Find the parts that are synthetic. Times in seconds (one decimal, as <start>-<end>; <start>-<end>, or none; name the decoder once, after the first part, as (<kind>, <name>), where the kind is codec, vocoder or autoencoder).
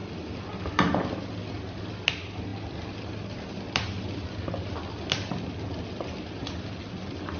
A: none